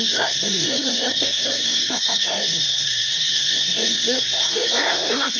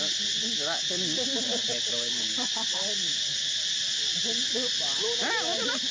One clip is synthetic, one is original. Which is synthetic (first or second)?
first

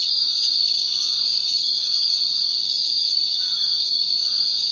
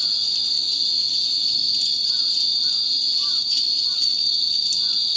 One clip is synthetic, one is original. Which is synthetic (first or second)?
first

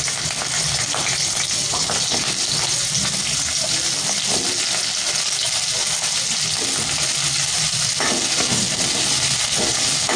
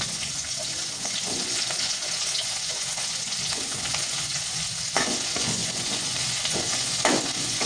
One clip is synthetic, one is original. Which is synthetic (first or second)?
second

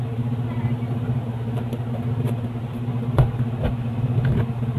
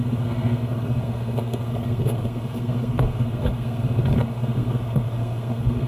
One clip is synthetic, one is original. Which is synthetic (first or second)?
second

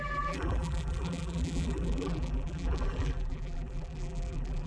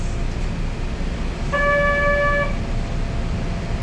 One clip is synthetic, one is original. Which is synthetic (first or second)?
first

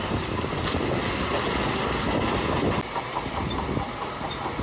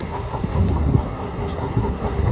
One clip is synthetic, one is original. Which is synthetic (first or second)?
second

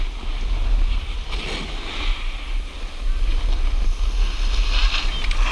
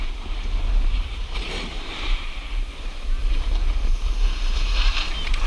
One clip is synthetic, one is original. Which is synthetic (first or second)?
second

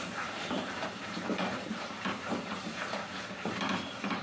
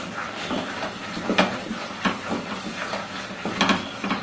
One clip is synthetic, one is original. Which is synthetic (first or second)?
first